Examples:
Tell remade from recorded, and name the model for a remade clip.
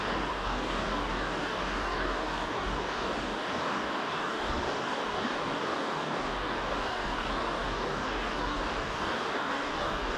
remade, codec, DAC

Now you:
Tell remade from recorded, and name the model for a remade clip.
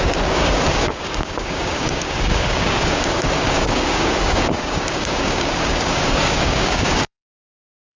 remade, codec, DAC